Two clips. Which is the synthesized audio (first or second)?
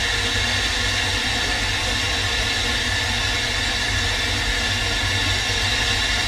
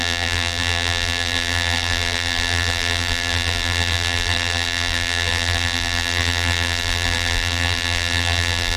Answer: second